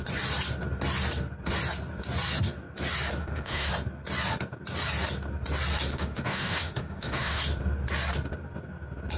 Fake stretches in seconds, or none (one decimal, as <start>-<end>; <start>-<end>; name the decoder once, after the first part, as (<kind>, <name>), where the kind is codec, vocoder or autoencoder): 3.2-3.7 (autoencoder, DAC-VAE); 5.9-7.4